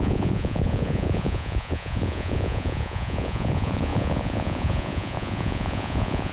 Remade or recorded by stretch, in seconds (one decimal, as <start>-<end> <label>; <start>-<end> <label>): 0.0-6.3 remade